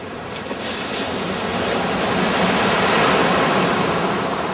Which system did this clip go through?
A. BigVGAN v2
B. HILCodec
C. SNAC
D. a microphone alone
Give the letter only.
D